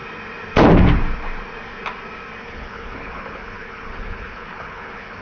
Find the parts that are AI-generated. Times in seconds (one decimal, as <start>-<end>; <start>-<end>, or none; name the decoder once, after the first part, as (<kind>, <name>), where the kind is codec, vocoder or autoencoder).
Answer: 2.4-5.2 (codec, HILCodec)